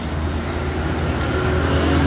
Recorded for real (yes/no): yes